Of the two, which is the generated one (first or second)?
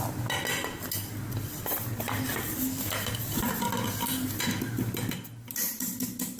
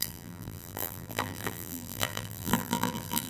second